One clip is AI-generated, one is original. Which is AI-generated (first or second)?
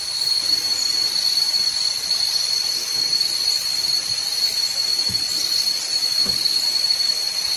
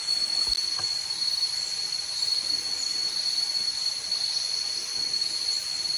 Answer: first